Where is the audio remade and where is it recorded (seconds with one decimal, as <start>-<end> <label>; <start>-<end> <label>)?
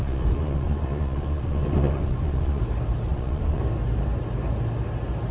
0.0-2.6 remade; 2.6-3.1 recorded; 3.1-3.6 remade; 3.6-5.3 recorded